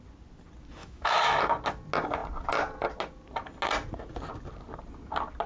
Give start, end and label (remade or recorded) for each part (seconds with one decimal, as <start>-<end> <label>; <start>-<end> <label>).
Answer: 0.0-0.8 recorded; 0.8-1.4 remade; 1.4-5.5 recorded